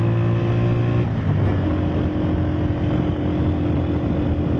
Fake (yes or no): no